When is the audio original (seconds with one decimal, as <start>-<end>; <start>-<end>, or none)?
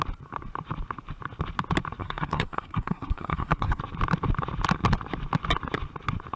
0.0-2.0; 3.8-6.4